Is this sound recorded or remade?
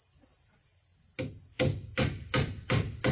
recorded